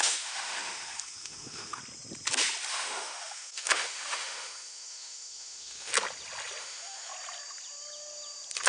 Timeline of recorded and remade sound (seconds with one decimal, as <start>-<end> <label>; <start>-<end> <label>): 0.0-1.8 remade; 1.8-2.7 recorded; 2.7-5.9 remade; 5.9-6.6 recorded; 6.6-7.1 remade; 7.1-8.7 recorded